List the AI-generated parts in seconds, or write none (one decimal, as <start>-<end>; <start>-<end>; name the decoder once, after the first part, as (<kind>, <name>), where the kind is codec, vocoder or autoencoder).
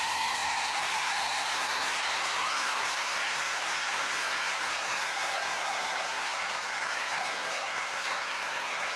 0.0-9.0 (codec, SNAC)